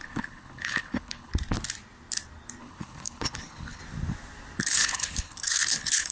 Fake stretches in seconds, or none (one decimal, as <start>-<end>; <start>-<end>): 0.0-1.3; 2.6-3.8; 4.6-6.1